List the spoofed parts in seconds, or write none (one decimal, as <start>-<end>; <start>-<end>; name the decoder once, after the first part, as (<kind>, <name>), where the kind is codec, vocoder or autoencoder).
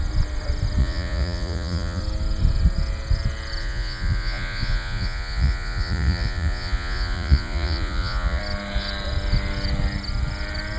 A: 0.8-2.0 (vocoder, Vocos); 3.6-8.4